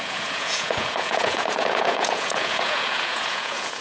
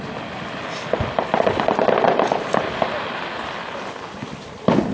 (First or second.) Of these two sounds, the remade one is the first